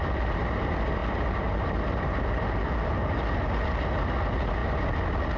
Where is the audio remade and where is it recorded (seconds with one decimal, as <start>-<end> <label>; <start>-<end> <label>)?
0.0-5.4 recorded